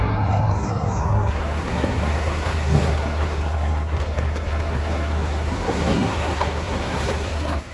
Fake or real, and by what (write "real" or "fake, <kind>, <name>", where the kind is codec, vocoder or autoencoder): fake, codec, SNAC